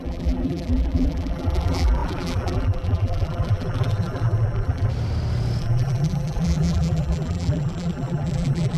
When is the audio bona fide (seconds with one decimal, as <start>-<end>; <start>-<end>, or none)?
4.9-5.6